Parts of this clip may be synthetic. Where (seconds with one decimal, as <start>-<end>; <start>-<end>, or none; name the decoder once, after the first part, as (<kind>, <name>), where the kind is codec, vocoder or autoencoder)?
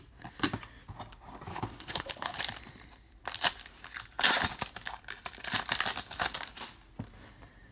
1.5-2.4 (codec, HILCodec)